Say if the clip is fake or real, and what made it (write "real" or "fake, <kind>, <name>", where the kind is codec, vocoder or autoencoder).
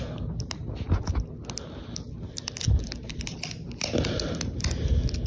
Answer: real